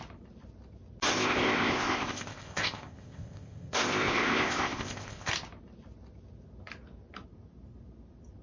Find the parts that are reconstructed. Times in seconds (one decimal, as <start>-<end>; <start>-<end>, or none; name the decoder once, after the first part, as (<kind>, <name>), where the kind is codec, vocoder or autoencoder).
1.1-5.3 (codec, ZipCodec)